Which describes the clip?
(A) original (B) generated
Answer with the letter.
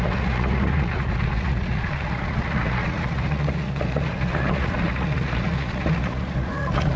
B